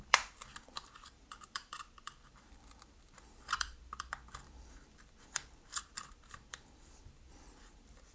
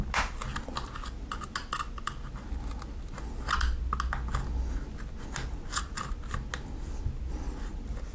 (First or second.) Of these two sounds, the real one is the second